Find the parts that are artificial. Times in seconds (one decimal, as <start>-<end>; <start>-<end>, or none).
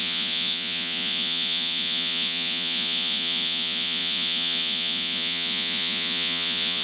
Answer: 0.0-6.8